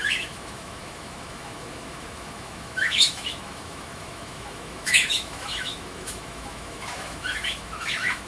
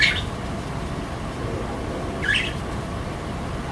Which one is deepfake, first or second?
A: first